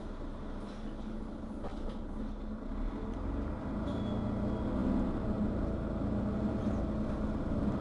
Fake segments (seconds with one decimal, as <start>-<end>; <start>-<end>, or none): none